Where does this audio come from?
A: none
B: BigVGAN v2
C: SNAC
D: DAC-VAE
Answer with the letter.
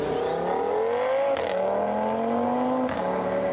A